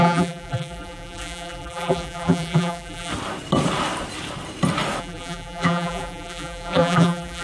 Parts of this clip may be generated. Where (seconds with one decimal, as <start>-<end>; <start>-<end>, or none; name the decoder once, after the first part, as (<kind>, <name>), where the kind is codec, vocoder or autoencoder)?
0.0-3.1 (vocoder, BigVGAN v2); 5.0-7.4